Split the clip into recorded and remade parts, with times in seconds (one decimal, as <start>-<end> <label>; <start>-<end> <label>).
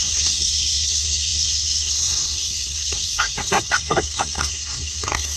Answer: 0.0-5.4 remade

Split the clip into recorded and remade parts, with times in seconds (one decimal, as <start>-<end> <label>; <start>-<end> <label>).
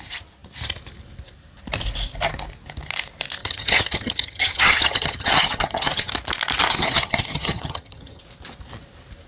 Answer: 0.0-3.4 recorded; 3.4-6.1 remade; 6.1-6.7 recorded; 6.7-8.2 remade; 8.2-9.3 recorded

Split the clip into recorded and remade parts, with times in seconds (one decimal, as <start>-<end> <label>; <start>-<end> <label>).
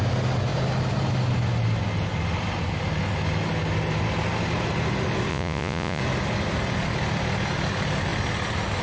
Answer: 0.0-5.3 recorded; 5.3-6.0 remade; 6.0-8.8 recorded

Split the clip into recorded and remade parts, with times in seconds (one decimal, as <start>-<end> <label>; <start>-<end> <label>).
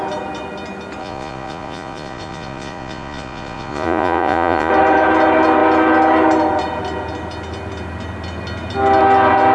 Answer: 0.0-1.0 recorded; 1.0-4.7 remade; 4.7-9.5 recorded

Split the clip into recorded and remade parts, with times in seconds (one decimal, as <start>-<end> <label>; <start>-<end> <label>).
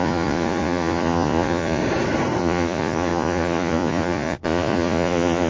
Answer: 0.0-1.8 remade; 1.8-2.4 recorded; 2.4-5.5 remade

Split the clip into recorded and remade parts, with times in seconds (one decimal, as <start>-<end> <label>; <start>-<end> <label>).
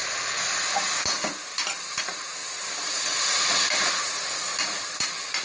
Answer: 0.0-5.4 recorded